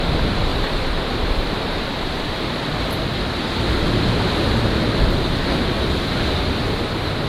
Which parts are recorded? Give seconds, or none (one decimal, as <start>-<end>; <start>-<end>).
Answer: 0.0-0.5; 2.7-7.3